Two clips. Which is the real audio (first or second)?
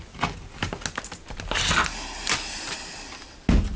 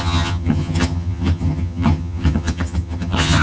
first